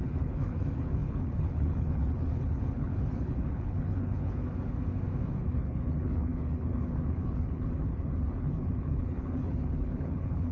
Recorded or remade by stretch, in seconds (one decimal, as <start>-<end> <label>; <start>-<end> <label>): 0.0-4.4 remade; 4.4-5.5 recorded; 5.5-10.5 remade